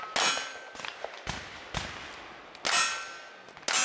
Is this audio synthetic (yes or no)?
no